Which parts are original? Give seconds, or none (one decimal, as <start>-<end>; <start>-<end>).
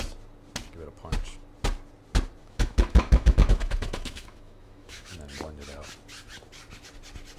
0.0-2.4; 5.1-7.4